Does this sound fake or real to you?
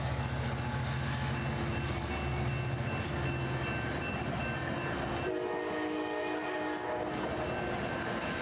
real